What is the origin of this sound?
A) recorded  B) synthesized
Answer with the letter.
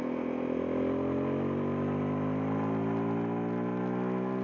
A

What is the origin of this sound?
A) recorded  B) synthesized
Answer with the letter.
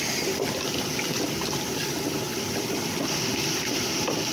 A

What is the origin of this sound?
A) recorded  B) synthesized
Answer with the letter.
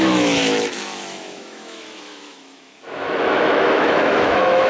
B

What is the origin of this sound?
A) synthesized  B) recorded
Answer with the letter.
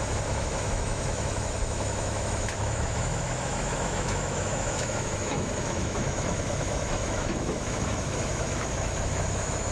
A